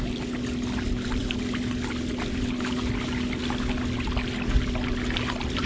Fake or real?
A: real